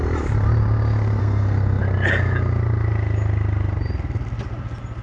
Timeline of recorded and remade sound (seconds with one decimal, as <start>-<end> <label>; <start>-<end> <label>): 0.0-1.2 recorded; 1.2-1.8 remade; 1.8-5.0 recorded